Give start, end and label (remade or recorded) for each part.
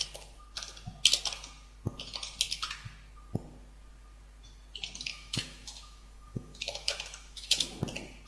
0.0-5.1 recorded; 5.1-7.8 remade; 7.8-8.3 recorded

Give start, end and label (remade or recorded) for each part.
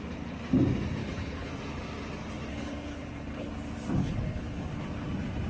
0.0-1.0 recorded; 1.0-1.5 remade; 1.5-2.5 recorded; 2.5-3.5 remade; 3.5-4.0 recorded; 4.0-4.8 remade; 4.8-5.5 recorded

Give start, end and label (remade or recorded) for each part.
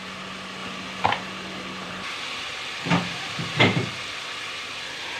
0.0-0.6 recorded; 0.6-3.6 remade; 3.6-5.2 recorded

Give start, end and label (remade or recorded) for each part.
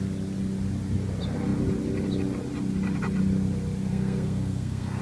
0.0-3.9 recorded; 3.9-5.0 remade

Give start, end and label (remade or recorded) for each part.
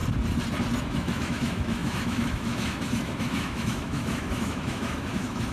0.0-0.8 recorded; 0.8-5.5 remade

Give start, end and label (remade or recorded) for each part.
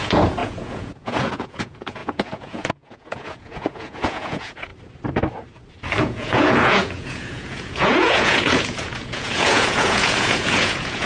0.0-4.7 remade; 4.7-6.0 recorded; 6.0-11.1 remade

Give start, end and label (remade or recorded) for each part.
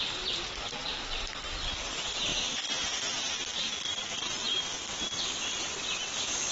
0.0-6.5 recorded